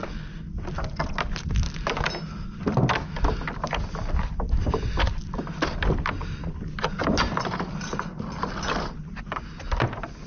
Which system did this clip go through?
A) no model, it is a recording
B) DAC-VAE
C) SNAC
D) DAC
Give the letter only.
A